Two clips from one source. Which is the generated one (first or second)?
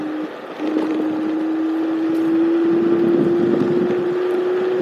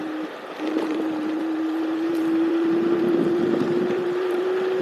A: second